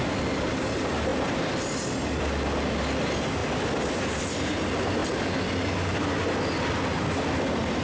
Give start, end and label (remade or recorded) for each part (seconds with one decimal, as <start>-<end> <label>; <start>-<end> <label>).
0.0-7.8 recorded

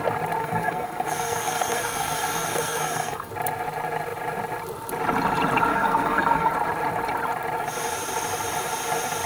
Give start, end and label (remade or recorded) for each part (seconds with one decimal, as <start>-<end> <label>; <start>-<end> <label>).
0.0-0.4 recorded; 0.4-3.3 remade; 3.3-5.7 recorded; 5.7-6.5 remade; 6.5-9.3 recorded

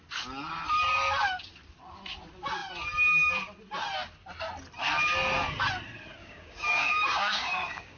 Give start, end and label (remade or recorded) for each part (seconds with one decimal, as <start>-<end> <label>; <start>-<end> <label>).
0.0-6.2 recorded; 6.2-8.0 remade

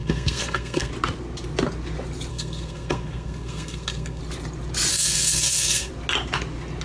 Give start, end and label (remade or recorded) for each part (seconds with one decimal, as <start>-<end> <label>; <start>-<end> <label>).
0.0-0.9 remade; 0.9-2.3 recorded; 2.3-4.2 remade; 4.2-4.9 recorded; 4.9-5.9 remade; 5.9-6.8 recorded

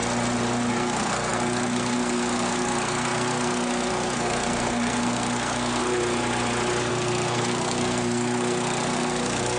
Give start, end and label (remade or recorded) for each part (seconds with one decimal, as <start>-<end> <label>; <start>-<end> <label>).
0.0-0.7 recorded; 0.7-5.8 remade; 5.8-6.9 recorded; 6.9-9.6 remade